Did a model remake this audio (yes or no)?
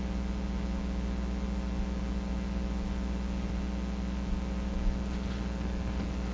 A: no